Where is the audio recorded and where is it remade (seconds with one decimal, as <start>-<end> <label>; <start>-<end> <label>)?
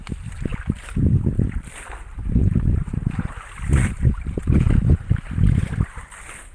0.0-2.4 recorded; 2.4-3.3 remade; 3.3-6.5 recorded